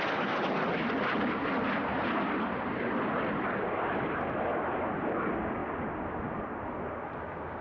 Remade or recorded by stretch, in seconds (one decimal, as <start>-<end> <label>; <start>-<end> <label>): 0.0-7.6 recorded